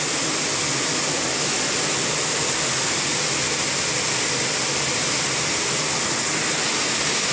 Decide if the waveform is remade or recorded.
recorded